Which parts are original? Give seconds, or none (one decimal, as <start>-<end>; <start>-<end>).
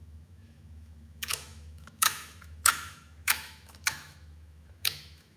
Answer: none